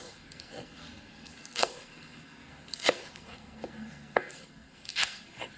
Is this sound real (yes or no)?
no